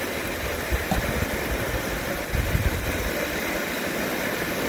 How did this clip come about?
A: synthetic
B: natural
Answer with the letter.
B